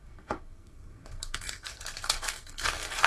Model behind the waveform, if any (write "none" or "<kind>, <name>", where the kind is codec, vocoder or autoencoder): codec, SNAC